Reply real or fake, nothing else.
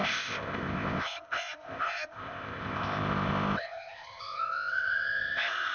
fake